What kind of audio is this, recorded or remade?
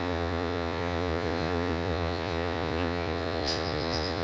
remade